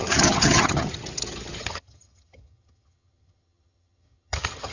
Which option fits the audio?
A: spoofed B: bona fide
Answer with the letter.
A